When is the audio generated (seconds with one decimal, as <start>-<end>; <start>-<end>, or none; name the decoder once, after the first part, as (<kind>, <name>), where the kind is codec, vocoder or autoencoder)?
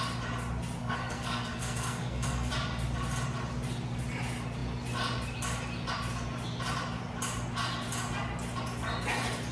0.8-2.5 (codec, SNAC)